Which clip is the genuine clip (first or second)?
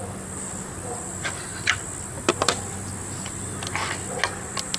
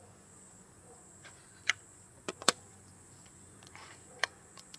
first